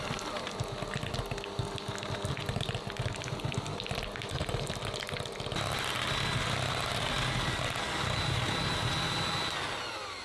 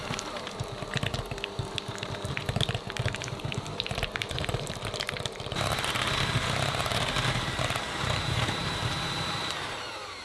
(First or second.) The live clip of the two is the first